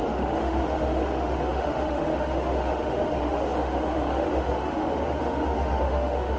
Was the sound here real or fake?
fake